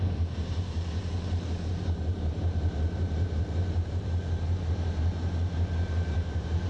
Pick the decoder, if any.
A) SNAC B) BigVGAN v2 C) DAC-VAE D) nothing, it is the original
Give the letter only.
B